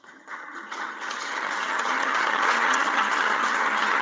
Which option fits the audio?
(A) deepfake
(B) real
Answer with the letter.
A